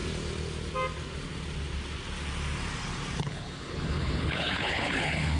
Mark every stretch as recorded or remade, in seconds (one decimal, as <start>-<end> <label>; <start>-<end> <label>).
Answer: 0.0-3.2 recorded; 3.2-5.4 remade